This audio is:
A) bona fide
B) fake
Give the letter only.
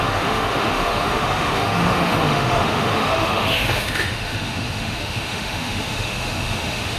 B